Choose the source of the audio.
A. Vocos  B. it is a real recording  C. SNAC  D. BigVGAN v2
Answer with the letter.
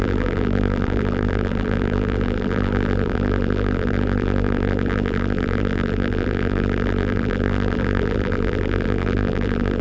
D